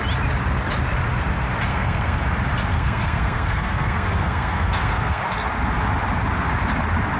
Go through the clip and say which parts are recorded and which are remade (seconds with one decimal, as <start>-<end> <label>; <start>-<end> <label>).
0.0-1.7 recorded; 1.7-2.2 remade; 2.2-2.7 recorded; 2.7-5.2 remade; 5.2-7.2 recorded